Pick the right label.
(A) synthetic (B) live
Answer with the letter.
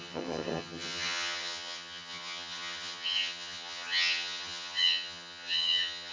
A